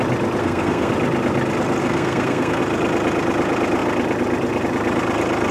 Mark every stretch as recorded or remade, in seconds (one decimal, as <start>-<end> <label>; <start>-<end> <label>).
0.0-0.4 recorded; 0.4-0.9 remade; 0.9-1.8 recorded; 1.8-2.6 remade; 2.6-5.5 recorded